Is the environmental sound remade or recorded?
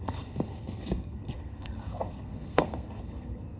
remade